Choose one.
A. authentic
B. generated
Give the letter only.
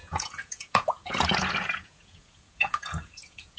B